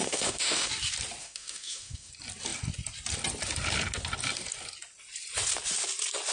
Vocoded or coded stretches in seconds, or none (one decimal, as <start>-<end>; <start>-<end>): 0.0-0.7; 1.2-2.1